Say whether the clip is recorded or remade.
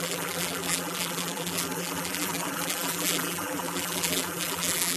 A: remade